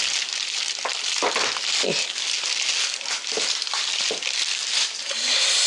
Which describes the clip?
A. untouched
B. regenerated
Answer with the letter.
B